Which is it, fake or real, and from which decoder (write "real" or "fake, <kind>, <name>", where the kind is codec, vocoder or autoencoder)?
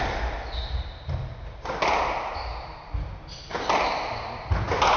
real